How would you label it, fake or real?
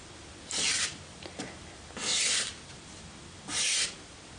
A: real